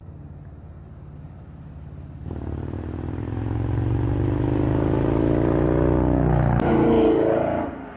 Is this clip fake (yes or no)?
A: no